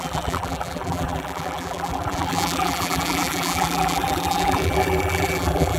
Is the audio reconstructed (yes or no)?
yes